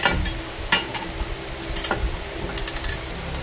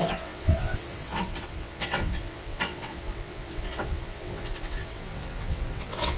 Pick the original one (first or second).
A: first